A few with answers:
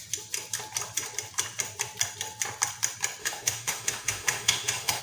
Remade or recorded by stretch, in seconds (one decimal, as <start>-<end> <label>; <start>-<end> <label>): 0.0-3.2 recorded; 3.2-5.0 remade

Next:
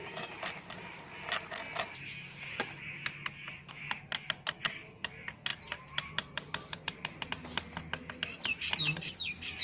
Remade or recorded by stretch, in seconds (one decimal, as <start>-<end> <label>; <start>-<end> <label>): 0.0-5.5 recorded; 5.5-7.3 remade; 7.3-8.5 recorded; 8.5-9.1 remade; 9.1-9.6 recorded

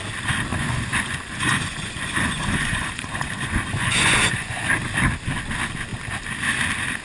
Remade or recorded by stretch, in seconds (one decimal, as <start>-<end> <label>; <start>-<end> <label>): 0.0-0.5 recorded; 0.5-4.7 remade; 4.7-7.0 recorded